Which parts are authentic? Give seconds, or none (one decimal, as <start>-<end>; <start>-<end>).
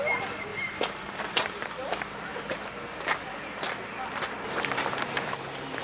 0.0-0.5; 1.9-5.8